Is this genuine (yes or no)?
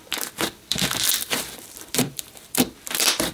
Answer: no